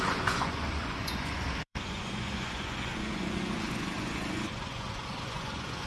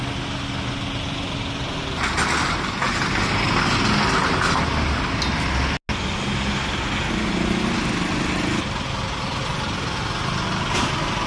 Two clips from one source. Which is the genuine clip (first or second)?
second